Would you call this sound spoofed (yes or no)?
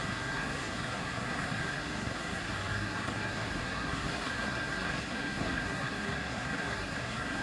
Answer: yes